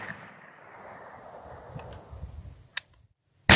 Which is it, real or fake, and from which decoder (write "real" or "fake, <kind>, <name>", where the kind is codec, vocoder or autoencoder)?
real